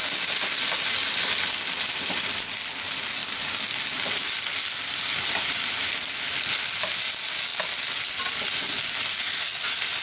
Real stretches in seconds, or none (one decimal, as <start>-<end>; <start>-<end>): 0.0-10.0